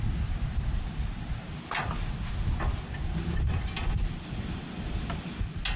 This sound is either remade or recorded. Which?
recorded